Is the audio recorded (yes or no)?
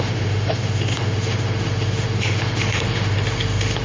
no